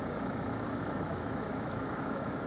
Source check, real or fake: fake